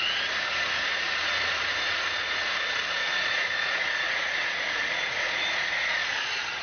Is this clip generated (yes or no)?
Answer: yes